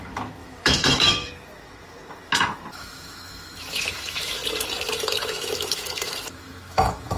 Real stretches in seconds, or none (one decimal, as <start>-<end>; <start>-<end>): 4.4-5.0